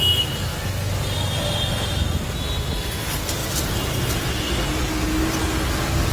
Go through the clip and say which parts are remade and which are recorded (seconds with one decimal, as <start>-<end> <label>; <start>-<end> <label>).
0.0-3.4 recorded; 3.4-4.4 remade; 4.4-6.1 recorded